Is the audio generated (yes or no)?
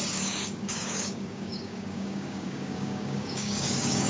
yes